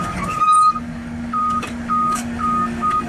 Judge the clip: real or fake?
fake